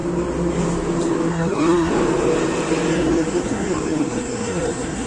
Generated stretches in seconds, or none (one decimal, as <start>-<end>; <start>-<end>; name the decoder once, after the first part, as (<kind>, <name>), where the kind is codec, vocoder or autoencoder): 1.3-1.9 (codec, SNAC); 2.9-5.1